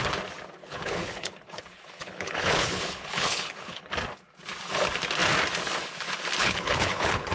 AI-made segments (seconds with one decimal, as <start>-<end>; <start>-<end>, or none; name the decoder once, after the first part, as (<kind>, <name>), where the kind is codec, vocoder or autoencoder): 0.6-3.9 (codec, HILCodec); 6.4-7.3